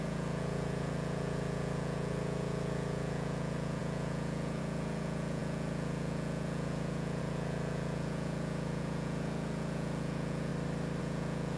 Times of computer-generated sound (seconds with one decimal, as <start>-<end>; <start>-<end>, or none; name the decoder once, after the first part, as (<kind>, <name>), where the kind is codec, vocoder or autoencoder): 0.0-10.5 (vocoder, Vocos); 11.0-11.6